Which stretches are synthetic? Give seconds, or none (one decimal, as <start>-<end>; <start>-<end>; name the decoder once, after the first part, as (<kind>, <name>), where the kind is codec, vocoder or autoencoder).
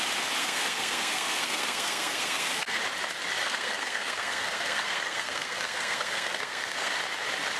0.4-2.8 (codec, SNAC); 3.4-6.9